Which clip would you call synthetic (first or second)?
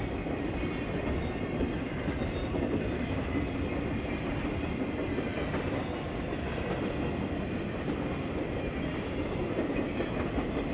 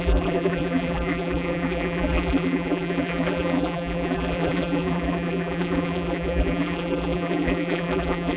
second